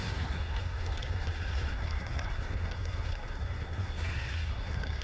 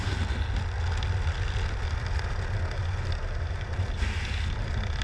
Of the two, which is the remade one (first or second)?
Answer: first